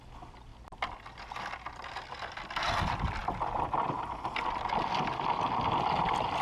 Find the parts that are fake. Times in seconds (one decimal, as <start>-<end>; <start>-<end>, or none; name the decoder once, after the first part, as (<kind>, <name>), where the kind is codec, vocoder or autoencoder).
none